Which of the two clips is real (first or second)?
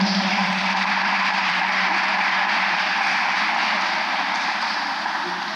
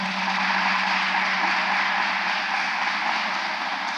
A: second